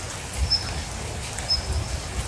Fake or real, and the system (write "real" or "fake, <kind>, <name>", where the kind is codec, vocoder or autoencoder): real